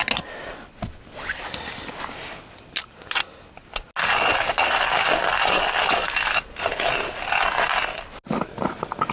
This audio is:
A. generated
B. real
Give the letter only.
B